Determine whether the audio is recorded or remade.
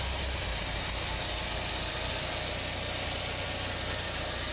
recorded